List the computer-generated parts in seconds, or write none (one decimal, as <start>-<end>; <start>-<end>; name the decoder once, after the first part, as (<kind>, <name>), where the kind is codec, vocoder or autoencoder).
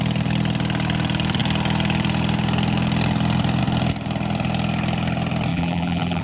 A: 5.5-6.2 (vocoder, BigVGAN v2)